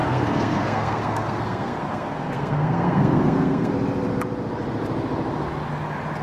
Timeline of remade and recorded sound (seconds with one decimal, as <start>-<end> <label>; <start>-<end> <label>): 0.0-3.7 remade; 3.7-6.2 recorded